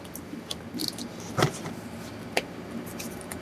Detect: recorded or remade recorded